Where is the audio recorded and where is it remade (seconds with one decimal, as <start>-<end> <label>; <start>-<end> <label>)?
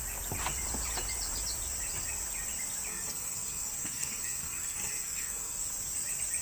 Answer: 0.0-2.9 recorded; 2.9-5.7 remade; 5.7-6.4 recorded